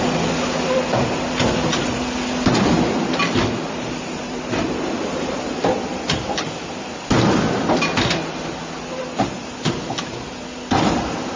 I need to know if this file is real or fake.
real